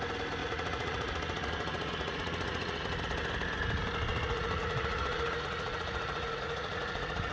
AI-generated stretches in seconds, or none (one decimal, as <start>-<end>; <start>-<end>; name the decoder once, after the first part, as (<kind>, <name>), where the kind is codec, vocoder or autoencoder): 0.4-3.0 (vocoder, Vocos); 4.1-7.3